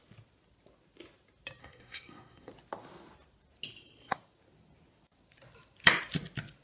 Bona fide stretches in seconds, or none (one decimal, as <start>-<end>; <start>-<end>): 0.0-1.6; 2.5-6.6